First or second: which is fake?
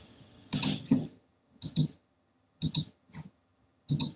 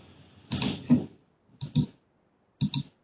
first